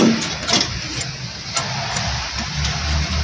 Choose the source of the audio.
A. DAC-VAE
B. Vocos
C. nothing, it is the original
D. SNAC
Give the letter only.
C